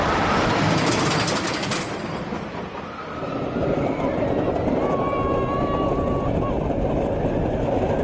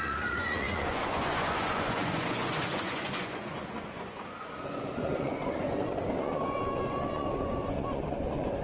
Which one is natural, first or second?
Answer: first